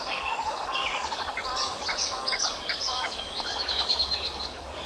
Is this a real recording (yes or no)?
no